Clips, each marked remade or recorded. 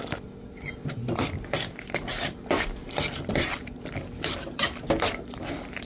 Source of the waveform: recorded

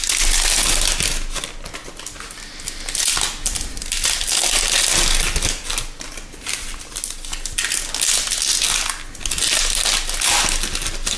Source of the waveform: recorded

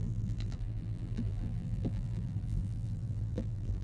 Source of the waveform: remade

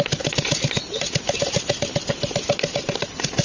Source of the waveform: recorded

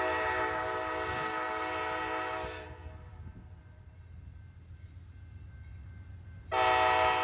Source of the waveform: recorded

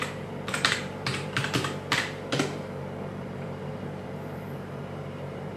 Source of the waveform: remade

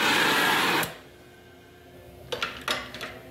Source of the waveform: recorded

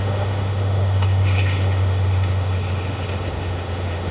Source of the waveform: remade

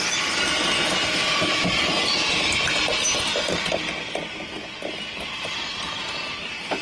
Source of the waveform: recorded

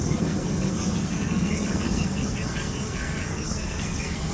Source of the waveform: remade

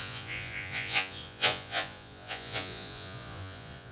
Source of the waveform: remade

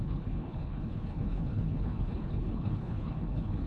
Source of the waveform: remade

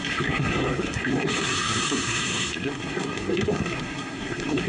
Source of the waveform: remade